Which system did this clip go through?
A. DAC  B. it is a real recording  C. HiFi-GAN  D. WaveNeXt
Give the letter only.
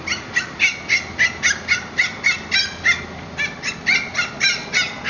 B